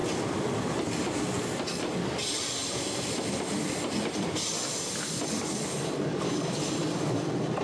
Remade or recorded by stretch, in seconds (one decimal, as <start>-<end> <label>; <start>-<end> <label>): 0.0-1.8 recorded; 1.8-7.6 remade